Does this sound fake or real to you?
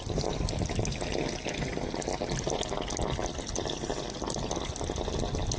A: real